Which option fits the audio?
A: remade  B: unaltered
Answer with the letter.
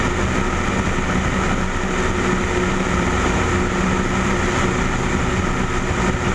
B